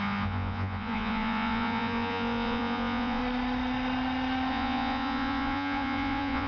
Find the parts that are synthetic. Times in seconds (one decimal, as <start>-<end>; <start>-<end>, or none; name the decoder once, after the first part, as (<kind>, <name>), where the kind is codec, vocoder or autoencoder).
0.0-3.2 (vocoder, Vocos); 4.5-6.5